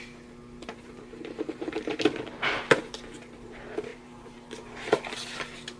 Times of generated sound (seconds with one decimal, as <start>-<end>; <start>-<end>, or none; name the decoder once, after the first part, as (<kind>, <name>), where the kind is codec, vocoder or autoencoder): 0.7-2.0 (vocoder, BigVGAN v2); 3.9-4.5